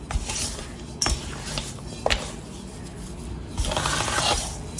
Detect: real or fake real